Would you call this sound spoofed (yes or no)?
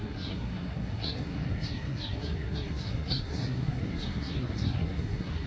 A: yes